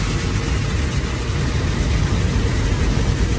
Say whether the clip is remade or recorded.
recorded